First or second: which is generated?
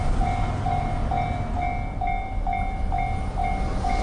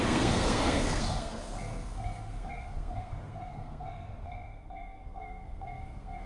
second